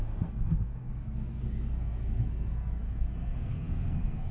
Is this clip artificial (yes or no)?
yes